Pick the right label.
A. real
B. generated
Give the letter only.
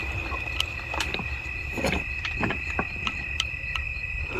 A